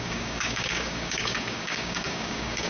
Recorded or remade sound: remade